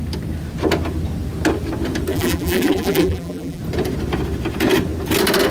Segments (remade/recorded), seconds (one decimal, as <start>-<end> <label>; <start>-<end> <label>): 0.0-2.1 recorded; 2.1-3.6 remade; 3.6-5.5 recorded